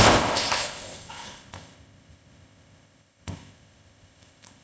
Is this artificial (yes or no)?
yes